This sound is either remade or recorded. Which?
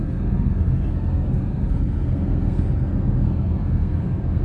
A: remade